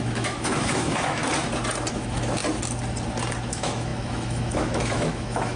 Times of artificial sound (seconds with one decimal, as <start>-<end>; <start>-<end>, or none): 0.0-1.2; 1.9-2.4; 3.5-5.6